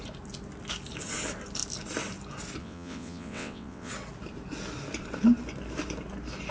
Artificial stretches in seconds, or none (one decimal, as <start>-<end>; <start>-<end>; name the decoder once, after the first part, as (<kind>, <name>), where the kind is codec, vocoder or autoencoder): 2.6-3.9 (vocoder, WaveNeXt)